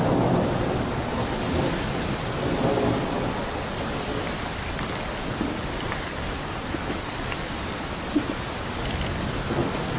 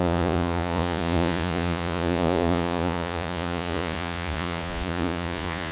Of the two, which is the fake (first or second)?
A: second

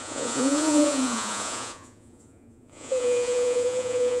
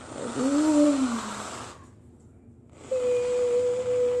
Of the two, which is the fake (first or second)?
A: first